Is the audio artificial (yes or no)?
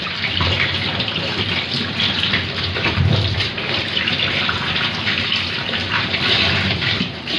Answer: yes